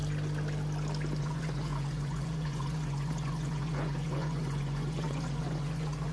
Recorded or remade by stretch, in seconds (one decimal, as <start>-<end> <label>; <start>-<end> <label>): 0.0-1.2 recorded; 1.2-6.1 remade